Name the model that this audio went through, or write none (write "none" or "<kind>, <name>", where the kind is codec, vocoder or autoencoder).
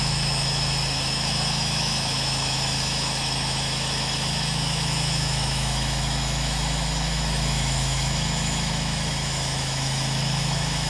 autoencoder, DAC-VAE